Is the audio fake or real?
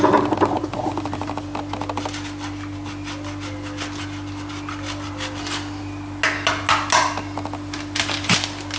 real